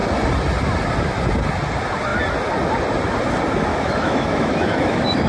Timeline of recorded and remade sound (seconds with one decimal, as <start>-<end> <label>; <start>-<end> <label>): 0.0-3.7 recorded; 3.7-5.3 remade